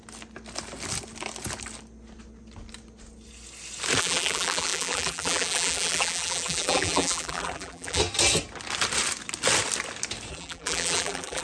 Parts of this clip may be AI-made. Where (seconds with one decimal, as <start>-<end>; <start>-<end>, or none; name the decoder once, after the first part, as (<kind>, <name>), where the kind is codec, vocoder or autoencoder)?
4.0-8.0 (vocoder, BigVGAN v2); 10.3-11.4